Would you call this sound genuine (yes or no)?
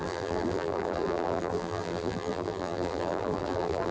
no